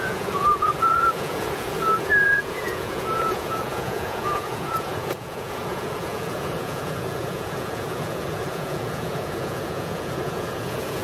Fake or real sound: fake